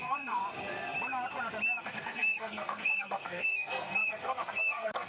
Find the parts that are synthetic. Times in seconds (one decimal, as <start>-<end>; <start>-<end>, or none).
0.0-0.4; 1.8-5.1